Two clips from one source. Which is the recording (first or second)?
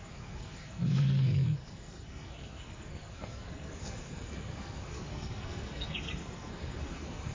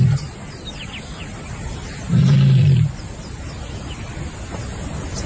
second